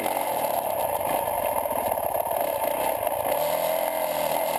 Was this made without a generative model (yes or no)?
yes